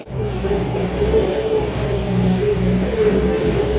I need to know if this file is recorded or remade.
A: remade